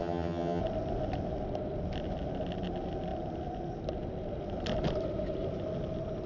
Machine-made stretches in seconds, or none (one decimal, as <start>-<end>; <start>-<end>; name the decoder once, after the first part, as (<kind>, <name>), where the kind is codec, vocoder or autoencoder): 0.0-0.6 (vocoder, HiFi-GAN)

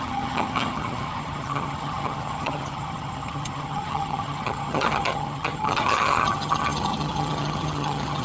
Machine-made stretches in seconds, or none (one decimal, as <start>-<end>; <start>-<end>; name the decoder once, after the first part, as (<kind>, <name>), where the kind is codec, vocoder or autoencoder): 0.0-8.2 (vocoder, HiFi-GAN)

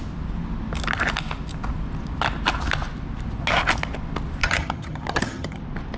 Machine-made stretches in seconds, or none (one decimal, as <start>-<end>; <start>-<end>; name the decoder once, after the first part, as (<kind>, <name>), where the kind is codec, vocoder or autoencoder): 4.4-5.6 (vocoder, HiFi-GAN)